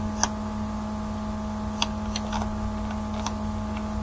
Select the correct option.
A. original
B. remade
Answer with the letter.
A